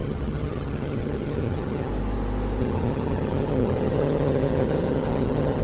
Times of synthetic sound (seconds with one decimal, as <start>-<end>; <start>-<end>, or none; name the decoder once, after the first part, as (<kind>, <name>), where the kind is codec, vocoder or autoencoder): 0.0-1.9 (vocoder, HiFi-GAN); 2.6-5.6